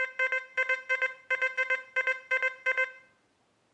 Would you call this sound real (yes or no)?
yes